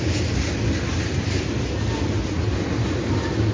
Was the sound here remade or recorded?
recorded